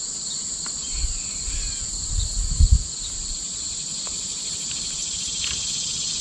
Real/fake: real